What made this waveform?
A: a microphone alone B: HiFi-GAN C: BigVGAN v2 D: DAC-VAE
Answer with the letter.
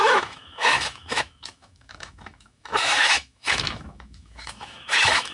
D